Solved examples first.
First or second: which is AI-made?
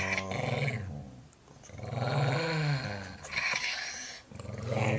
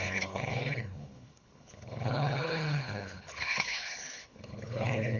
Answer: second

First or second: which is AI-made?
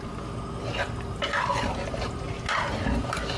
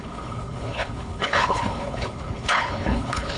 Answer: second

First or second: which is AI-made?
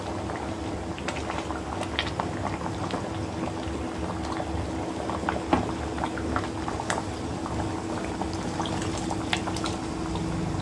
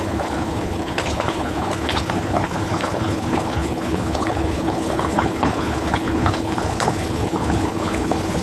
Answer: second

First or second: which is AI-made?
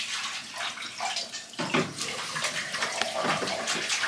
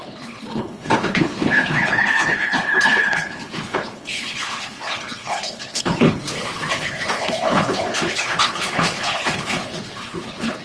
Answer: second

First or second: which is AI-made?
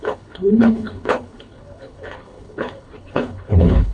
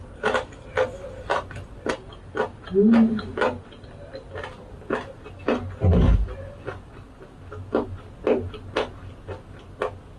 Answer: first